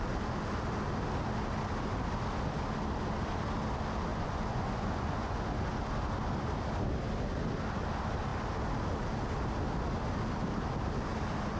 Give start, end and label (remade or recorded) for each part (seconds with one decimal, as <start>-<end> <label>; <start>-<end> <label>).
0.0-4.1 recorded; 4.1-5.4 remade; 5.4-11.6 recorded